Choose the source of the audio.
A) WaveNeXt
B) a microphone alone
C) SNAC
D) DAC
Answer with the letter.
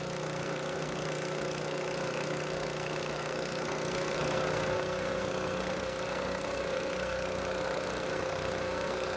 C